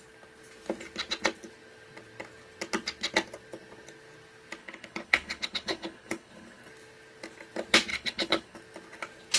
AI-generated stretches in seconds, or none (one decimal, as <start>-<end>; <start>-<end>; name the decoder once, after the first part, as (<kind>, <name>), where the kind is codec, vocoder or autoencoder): 4.6-6.7 (codec, HILCodec); 7.9-8.6